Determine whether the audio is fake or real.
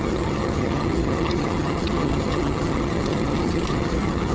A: fake